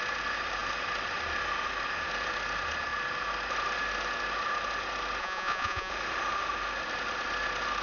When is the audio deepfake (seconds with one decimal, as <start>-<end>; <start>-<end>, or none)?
5.2-5.9